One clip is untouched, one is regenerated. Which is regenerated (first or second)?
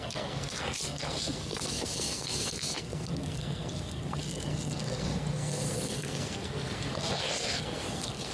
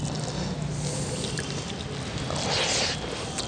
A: first